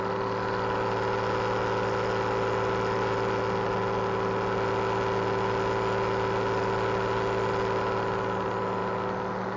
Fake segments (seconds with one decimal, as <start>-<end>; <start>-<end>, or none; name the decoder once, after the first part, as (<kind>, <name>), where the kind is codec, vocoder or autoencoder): none